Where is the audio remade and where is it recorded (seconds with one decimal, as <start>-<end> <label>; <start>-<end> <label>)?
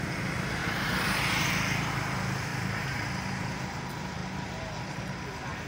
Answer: 0.0-0.6 recorded; 0.6-1.5 remade; 1.5-2.5 recorded; 2.5-3.6 remade; 3.6-5.7 recorded